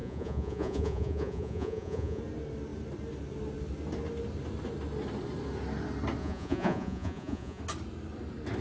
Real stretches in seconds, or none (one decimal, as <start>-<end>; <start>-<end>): 2.2-6.2; 7.6-8.6